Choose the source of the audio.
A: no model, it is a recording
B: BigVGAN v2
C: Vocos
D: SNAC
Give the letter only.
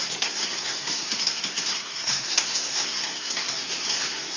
D